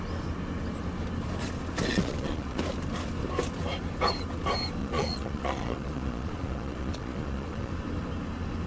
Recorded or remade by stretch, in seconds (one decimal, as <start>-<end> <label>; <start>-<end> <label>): 0.0-1.9 recorded; 1.9-2.6 remade; 2.6-4.8 recorded; 4.8-7.7 remade; 7.7-8.7 recorded